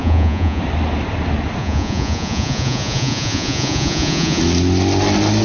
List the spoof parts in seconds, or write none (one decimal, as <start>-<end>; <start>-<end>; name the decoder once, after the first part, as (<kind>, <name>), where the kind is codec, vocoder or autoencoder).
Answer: 0.0-0.6 (vocoder, Vocos); 1.6-4.4